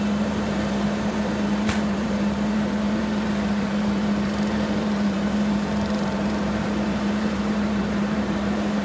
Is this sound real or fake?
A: fake